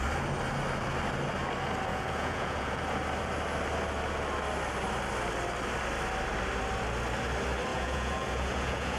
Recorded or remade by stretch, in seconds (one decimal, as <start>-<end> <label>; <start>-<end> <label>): 0.0-1.9 recorded; 1.9-2.8 remade; 2.8-7.7 recorded; 7.7-9.0 remade